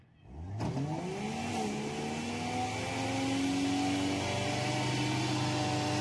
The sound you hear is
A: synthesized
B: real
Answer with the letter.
B